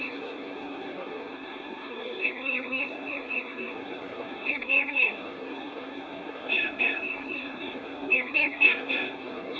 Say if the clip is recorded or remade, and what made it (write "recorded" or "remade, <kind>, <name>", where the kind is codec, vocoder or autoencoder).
remade, codec, SNAC